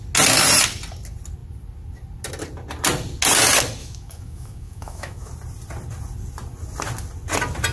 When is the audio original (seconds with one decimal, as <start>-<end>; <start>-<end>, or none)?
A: 0.0-3.8; 5.3-7.7